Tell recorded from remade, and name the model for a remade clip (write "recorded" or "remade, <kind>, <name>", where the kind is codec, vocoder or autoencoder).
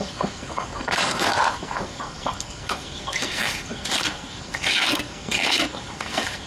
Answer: remade, codec, SNAC